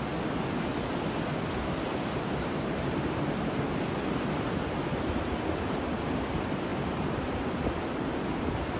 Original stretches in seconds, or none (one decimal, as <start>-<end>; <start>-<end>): 0.0-1.9; 2.9-6.7; 7.4-8.8